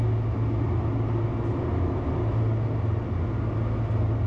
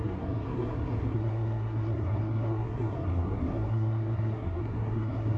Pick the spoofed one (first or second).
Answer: second